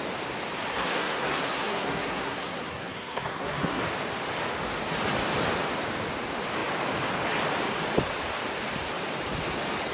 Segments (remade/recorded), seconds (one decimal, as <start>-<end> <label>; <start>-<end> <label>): 0.0-0.7 recorded; 0.7-3.8 remade; 3.8-9.9 recorded